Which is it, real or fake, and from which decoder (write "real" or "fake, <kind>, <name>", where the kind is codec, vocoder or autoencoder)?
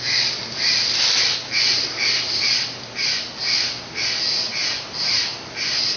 real